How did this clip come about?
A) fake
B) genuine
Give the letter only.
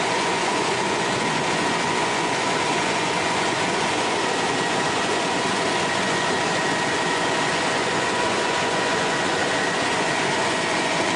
A